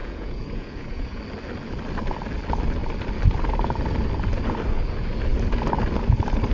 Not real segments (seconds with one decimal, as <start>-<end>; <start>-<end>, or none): 0.0-1.2